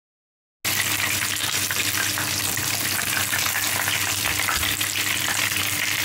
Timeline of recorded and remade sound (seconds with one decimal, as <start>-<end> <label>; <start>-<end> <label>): 0.0-6.0 recorded